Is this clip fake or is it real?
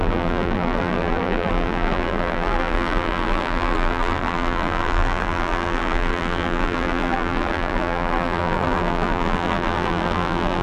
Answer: fake